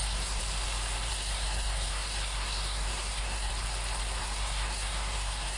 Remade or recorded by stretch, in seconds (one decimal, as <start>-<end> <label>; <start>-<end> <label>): 0.0-0.4 remade; 0.4-1.1 recorded; 1.1-3.5 remade; 3.5-4.2 recorded; 4.2-5.6 remade

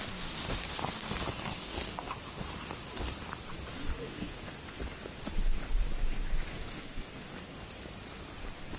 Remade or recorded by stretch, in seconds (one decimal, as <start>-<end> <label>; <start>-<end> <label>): 0.0-1.6 recorded; 1.6-2.1 remade; 2.1-3.8 recorded; 3.8-4.5 remade; 4.5-6.5 recorded; 6.5-7.6 remade; 7.6-8.8 recorded